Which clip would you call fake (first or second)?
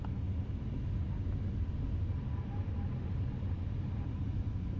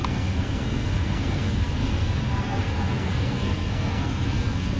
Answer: second